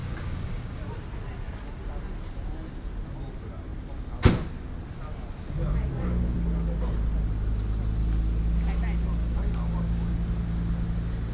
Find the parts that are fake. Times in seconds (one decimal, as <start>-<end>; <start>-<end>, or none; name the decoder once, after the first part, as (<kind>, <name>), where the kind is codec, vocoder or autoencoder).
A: 0.0-0.8 (codec, DAC); 9.2-10.1